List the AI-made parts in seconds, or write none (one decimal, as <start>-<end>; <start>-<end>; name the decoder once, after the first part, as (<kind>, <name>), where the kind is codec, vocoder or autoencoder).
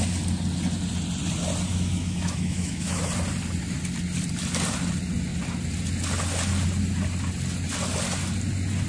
1.7-3.1 (autoencoder, DAC-VAE)